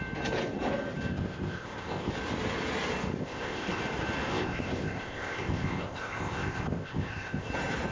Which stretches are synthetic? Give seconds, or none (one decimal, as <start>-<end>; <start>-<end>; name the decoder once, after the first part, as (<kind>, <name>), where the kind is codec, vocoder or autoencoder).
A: 1.1-2.1 (codec, ZipCodec); 3.2-3.8; 4.3-7.5